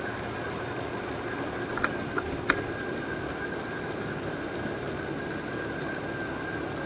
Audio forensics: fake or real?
fake